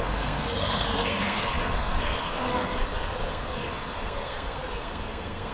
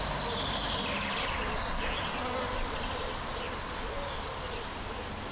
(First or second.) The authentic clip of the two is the second